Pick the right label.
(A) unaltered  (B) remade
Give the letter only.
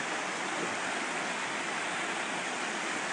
A